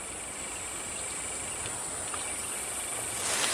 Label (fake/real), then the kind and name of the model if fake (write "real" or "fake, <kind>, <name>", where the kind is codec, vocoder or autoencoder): real